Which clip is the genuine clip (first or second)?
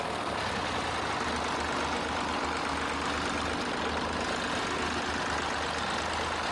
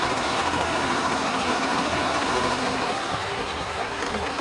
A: first